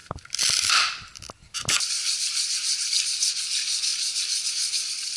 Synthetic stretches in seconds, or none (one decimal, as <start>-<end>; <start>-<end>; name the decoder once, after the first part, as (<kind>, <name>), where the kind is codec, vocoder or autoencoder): 0.0-2.9 (vocoder, BigVGAN v2); 3.9-4.5